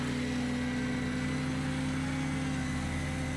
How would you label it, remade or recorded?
recorded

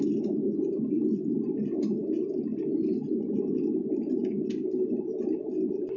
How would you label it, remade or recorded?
recorded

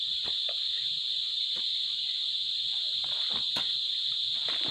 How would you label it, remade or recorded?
recorded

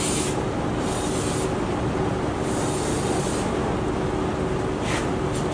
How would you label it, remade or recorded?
recorded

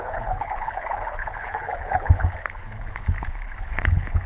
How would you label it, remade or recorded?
remade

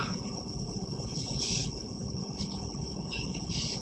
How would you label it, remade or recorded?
remade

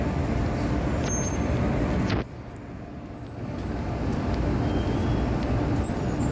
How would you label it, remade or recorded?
recorded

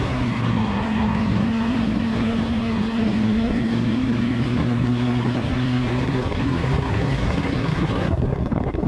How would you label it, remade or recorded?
remade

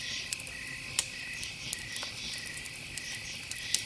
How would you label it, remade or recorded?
recorded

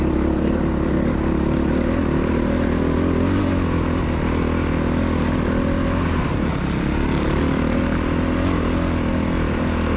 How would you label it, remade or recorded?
recorded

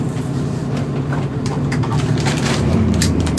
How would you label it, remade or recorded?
remade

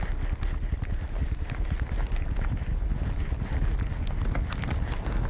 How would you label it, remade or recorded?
recorded